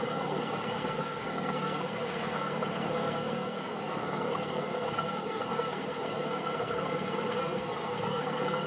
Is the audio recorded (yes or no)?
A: no